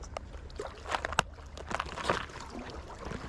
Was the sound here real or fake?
real